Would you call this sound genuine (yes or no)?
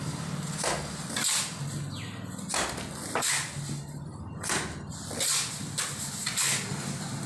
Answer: yes